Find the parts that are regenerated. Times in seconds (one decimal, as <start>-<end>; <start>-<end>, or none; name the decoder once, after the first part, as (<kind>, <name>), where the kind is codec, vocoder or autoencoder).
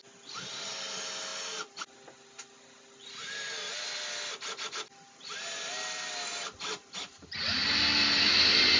none